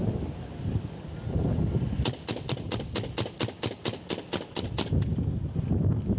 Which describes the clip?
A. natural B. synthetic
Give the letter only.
A